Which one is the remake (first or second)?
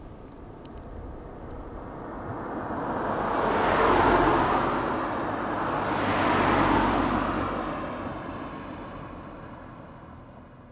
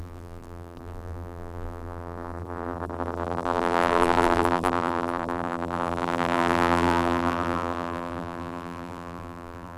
second